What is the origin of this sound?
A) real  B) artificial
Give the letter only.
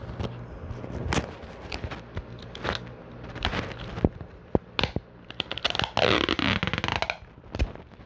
A